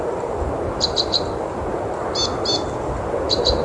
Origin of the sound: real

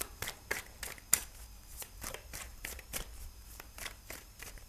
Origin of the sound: fake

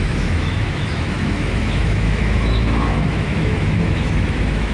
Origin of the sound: fake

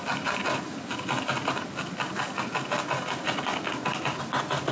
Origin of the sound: real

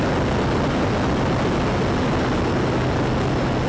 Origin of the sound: real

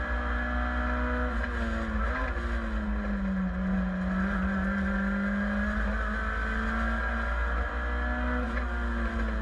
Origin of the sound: real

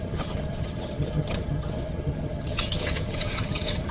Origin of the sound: fake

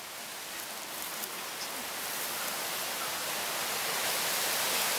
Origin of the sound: real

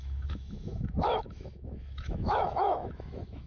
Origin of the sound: fake